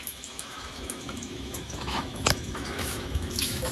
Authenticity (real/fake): fake